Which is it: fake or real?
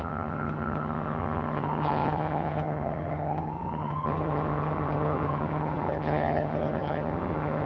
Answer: fake